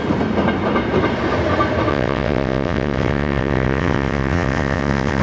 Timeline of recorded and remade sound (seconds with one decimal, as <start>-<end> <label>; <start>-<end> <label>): 0.0-1.9 recorded; 1.9-5.2 remade